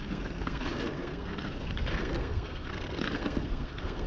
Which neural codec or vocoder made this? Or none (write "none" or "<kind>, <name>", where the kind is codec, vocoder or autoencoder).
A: codec, SNAC